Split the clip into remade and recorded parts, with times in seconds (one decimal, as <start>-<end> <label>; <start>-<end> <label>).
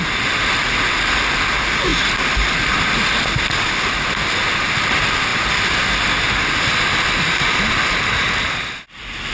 0.0-9.3 recorded